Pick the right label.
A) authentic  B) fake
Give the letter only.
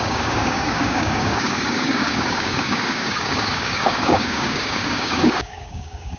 B